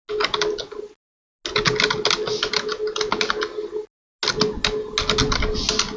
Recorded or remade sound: recorded